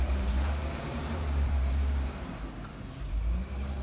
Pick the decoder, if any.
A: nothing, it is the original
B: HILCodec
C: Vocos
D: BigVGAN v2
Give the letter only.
D